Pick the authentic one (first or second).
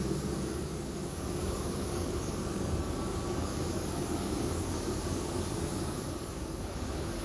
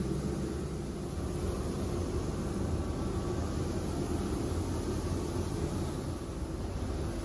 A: second